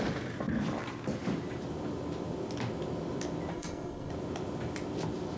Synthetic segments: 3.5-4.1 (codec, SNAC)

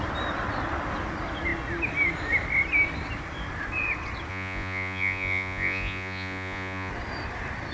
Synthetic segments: 4.3-6.9 (vocoder, Vocos)

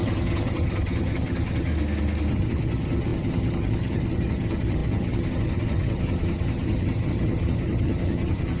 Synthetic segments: 0.0-1.7 (vocoder, HiFi-GAN); 2.3-8.6

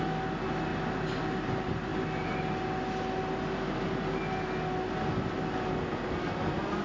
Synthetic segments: none

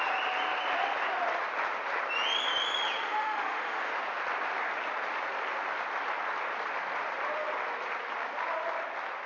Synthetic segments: 3.0-3.9 (autoencoder, DAC-VAE)

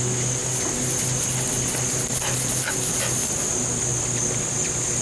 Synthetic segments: none

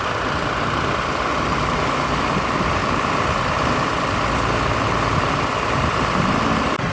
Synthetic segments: 1.3-2.1 (vocoder, BigVGAN v2)

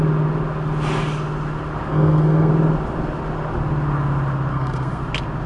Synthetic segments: 1.9-2.5 (codec, SNAC); 4.5-5.0